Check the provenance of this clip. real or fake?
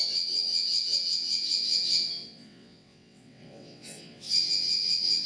fake